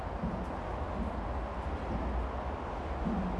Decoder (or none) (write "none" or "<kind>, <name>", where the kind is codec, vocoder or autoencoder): none